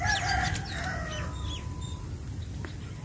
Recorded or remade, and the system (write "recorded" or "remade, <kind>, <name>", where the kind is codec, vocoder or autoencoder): recorded